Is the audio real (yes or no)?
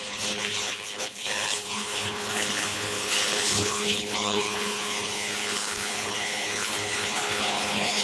no